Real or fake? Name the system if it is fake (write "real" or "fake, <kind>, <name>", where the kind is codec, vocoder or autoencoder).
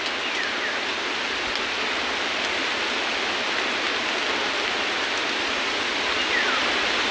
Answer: real